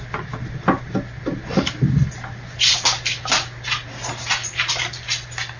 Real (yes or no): yes